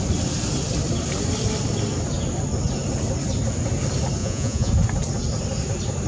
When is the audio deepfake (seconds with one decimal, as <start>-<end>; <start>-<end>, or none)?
4.2-4.7